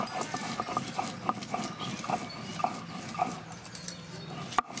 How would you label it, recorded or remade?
recorded